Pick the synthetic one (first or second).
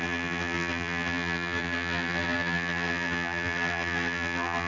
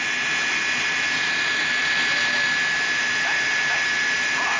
first